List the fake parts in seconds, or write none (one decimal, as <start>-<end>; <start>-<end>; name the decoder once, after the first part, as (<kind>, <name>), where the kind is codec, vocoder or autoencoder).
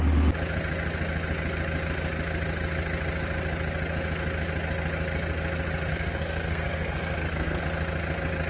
5.9-7.6 (codec, SNAC)